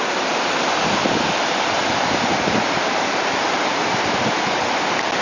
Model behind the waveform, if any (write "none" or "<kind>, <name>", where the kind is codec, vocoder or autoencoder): vocoder, BigVGAN v2